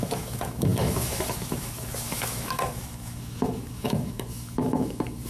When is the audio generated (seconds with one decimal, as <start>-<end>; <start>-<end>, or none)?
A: 0.0-5.3